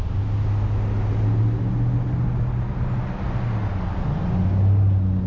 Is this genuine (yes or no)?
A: yes